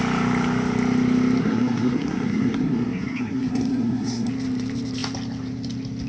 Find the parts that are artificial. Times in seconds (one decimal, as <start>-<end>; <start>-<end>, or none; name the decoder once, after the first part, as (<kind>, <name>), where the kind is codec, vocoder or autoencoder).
1.4-4.3 (codec, SNAC)